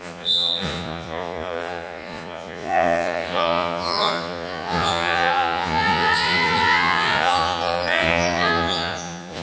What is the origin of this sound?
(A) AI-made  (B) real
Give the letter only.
A